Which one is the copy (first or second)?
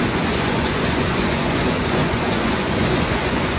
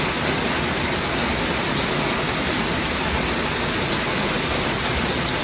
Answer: first